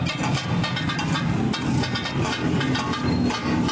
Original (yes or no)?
yes